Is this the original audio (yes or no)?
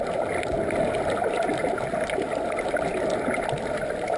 yes